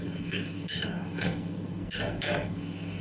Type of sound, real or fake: fake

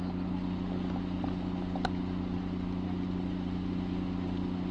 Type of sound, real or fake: real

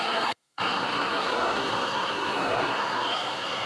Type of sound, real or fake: fake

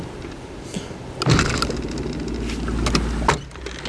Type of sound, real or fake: real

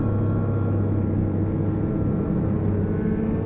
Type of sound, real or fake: real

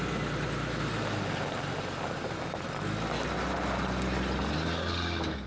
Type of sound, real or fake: real